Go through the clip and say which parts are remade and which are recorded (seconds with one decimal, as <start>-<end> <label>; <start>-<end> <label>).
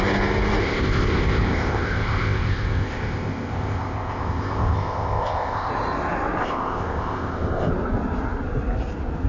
0.0-0.6 recorded; 0.6-5.7 remade; 5.7-6.4 recorded; 6.4-7.7 remade; 7.7-9.3 recorded